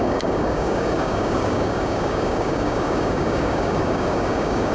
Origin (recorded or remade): remade